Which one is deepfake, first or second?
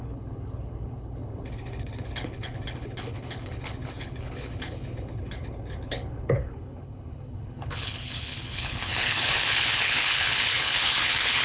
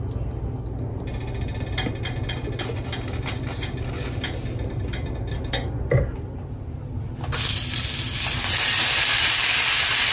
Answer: first